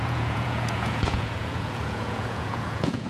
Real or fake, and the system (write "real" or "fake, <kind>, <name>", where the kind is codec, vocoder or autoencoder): fake, vocoder, Vocos